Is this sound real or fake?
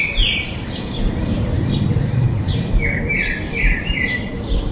fake